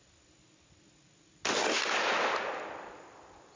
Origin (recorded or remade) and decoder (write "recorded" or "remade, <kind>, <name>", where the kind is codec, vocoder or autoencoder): recorded